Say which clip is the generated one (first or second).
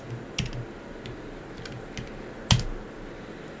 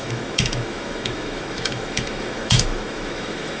second